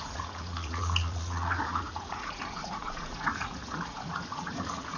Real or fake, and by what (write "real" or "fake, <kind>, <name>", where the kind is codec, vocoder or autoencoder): fake, vocoder, Vocos